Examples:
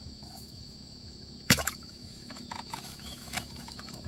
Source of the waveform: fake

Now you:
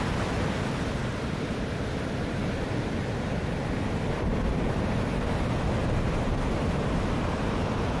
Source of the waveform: real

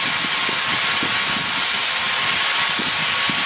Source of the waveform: real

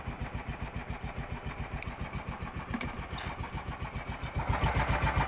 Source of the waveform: real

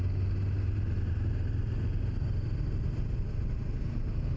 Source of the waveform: real